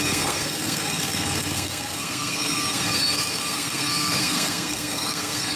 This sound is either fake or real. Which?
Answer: fake